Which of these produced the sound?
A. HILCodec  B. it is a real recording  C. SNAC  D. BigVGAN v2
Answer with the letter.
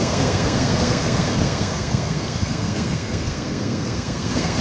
C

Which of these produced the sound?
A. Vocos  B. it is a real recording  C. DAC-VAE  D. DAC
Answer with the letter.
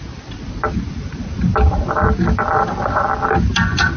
B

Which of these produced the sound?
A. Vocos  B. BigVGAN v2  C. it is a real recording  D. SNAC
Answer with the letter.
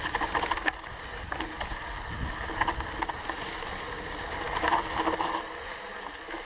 C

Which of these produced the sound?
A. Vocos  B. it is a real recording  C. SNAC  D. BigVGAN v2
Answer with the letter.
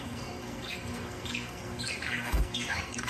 C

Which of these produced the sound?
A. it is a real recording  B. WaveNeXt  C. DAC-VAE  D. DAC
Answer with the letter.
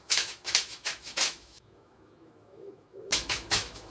C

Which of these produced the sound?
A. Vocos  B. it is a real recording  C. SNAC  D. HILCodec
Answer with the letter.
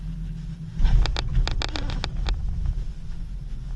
B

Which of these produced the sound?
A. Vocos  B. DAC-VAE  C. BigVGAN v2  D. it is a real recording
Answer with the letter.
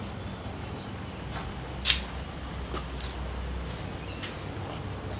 D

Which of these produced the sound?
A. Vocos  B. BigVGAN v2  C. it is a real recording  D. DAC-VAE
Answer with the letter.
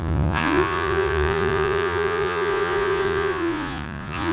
A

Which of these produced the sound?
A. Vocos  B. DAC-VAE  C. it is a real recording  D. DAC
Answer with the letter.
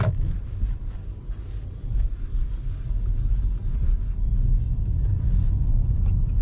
C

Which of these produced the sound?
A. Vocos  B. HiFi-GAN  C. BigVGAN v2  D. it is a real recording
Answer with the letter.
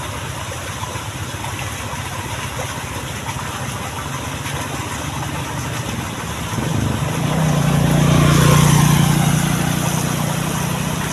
D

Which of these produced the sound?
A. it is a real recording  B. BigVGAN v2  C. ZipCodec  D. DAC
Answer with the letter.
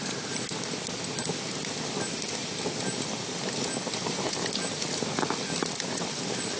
A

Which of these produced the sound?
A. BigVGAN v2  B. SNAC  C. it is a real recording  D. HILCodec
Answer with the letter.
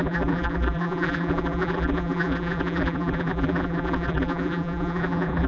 A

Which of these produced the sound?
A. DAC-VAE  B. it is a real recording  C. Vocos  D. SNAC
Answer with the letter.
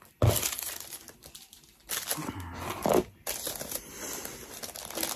B